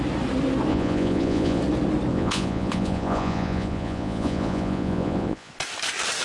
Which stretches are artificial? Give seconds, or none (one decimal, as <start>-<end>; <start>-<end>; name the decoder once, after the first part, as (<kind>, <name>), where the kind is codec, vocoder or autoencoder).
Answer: 0.7-1.6 (vocoder, Vocos); 2.1-5.5